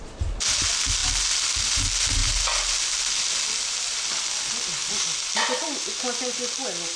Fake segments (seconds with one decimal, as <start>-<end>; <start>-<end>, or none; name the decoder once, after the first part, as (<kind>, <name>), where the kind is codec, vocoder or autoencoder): none